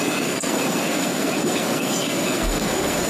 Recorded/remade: remade